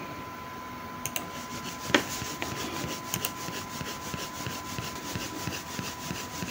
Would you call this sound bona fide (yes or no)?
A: yes